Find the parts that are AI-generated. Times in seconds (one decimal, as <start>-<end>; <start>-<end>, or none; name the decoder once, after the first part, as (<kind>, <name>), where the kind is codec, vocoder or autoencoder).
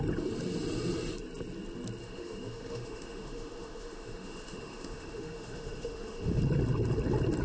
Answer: 2.0-6.4 (autoencoder, DAC-VAE)